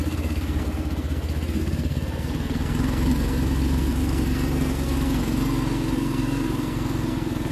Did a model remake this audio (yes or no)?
yes